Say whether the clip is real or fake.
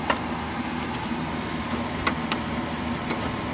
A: real